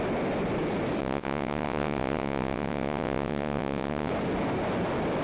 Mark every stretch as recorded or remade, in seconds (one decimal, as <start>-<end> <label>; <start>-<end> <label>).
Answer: 0.0-1.0 recorded; 1.0-4.1 remade; 4.1-5.2 recorded